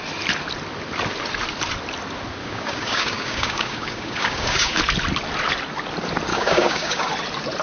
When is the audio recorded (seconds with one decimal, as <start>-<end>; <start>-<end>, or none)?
0.0-2.4; 4.8-6.3; 7.1-7.6